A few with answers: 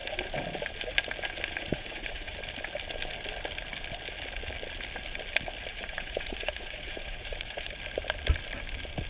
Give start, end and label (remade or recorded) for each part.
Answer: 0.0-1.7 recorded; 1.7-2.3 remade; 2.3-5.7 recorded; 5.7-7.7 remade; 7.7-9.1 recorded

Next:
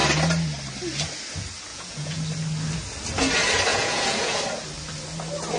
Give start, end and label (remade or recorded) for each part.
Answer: 0.0-1.7 recorded; 1.7-2.2 remade; 2.2-3.7 recorded; 3.7-4.4 remade; 4.4-5.6 recorded

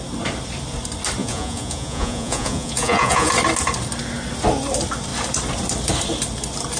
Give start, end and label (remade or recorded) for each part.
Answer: 0.0-1.2 recorded; 1.2-3.3 remade; 3.3-6.8 recorded